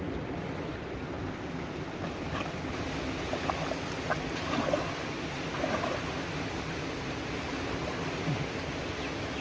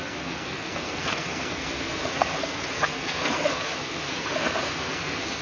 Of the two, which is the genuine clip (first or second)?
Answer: first